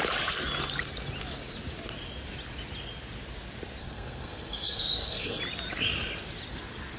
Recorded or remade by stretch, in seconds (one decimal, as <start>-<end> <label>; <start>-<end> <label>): 0.0-3.8 recorded; 3.8-5.4 remade; 5.4-7.0 recorded